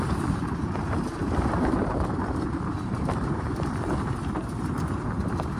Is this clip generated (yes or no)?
yes